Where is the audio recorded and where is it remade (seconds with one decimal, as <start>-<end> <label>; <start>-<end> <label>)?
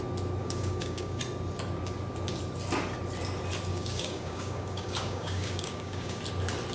0.0-0.4 recorded; 0.4-1.2 remade; 1.2-3.7 recorded; 3.7-6.2 remade; 6.2-6.7 recorded